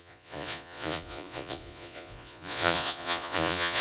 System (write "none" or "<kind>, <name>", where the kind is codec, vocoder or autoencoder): vocoder, Vocos